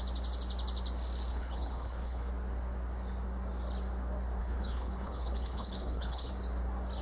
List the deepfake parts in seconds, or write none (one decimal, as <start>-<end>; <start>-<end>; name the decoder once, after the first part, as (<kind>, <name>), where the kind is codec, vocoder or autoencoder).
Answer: 1.3-2.3 (codec, HILCodec); 4.4-6.3